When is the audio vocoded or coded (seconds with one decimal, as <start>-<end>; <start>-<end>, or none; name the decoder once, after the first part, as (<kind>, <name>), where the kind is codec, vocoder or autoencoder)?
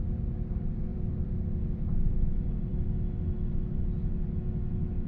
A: 0.9-1.4 (vocoder, BigVGAN v2)